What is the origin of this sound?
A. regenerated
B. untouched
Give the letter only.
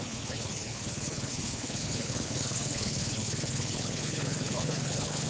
A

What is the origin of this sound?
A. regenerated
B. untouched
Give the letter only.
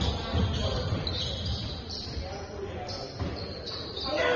B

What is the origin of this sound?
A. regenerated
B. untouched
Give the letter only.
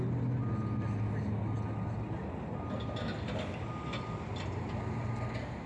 B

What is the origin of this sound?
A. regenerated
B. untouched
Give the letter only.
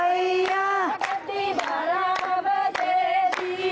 B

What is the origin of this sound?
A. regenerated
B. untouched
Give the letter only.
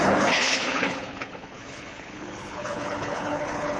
A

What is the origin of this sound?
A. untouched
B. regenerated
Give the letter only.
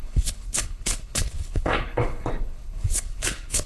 B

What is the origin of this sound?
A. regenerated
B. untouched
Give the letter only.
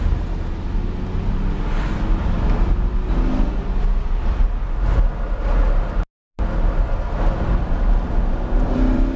B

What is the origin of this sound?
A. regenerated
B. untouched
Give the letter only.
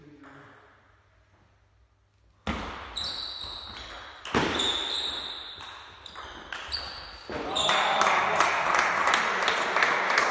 B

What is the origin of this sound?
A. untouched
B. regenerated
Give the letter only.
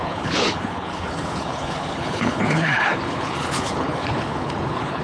B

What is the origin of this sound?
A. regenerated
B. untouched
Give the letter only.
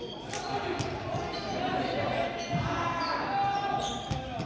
B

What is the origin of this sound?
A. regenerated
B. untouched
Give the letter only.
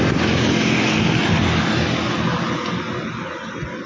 B